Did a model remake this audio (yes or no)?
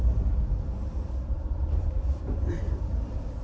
yes